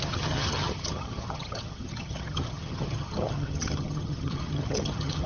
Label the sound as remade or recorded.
remade